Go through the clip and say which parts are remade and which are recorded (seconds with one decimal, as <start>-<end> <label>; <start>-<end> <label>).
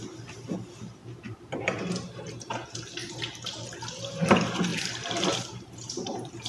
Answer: 0.0-1.0 recorded; 1.0-2.2 remade; 2.2-4.7 recorded; 4.7-6.5 remade